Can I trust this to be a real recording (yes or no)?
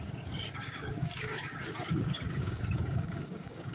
no